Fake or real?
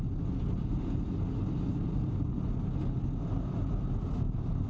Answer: real